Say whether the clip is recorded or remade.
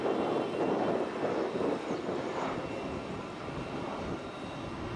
recorded